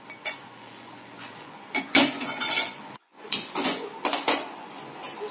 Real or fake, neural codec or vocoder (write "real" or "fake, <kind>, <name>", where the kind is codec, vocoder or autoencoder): fake, vocoder, Vocos